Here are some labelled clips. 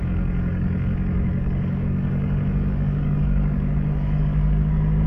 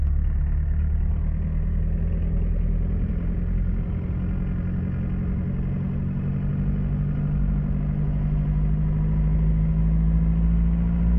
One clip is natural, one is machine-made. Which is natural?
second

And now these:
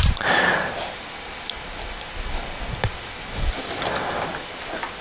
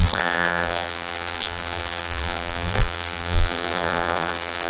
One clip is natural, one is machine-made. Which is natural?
first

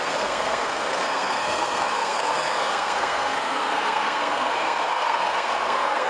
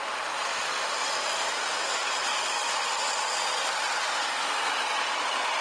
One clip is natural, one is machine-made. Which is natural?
second